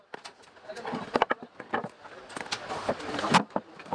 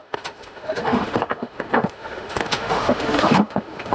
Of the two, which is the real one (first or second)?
first